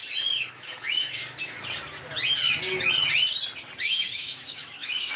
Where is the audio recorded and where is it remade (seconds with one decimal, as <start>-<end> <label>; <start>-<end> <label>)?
0.0-0.5 recorded; 0.5-1.2 remade; 1.2-3.8 recorded; 3.8-5.2 remade